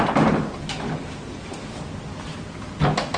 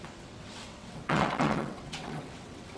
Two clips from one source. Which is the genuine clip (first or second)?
first